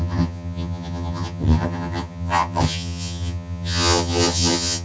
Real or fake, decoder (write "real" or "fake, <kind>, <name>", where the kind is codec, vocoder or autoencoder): fake, vocoder, HiFi-GAN